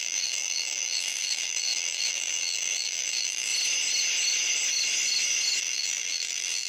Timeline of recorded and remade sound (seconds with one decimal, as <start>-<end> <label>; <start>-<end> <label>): 0.0-3.5 remade; 3.5-5.6 recorded; 5.6-6.7 remade